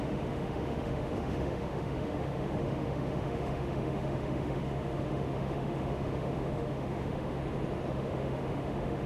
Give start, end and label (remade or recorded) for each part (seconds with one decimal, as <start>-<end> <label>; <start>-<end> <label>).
0.0-7.4 remade; 7.4-7.9 recorded; 7.9-9.1 remade